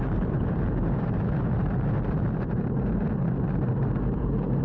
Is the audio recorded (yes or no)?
no